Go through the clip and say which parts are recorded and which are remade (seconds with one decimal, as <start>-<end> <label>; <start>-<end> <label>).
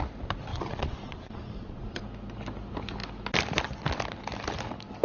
0.0-0.5 recorded; 0.5-2.0 remade; 2.0-5.0 recorded